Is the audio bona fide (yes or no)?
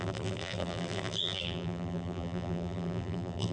no